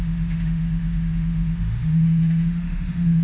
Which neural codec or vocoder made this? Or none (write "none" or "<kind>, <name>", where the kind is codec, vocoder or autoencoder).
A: autoencoder, DAC-VAE